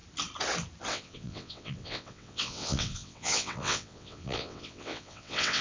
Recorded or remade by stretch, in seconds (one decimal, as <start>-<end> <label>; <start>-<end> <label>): 0.0-0.9 recorded; 0.9-5.6 remade